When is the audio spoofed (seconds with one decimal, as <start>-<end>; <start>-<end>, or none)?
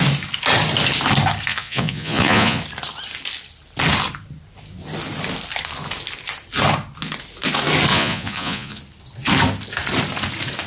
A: 1.5-2.6; 7.9-8.8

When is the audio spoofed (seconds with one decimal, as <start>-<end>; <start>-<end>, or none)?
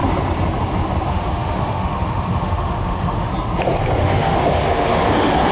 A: 1.1-3.3; 4.0-5.1